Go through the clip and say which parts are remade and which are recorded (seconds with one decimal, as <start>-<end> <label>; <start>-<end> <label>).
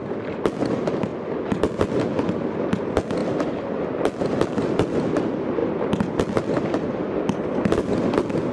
0.0-8.5 recorded